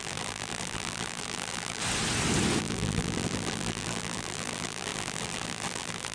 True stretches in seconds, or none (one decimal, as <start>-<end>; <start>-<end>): 1.8-2.6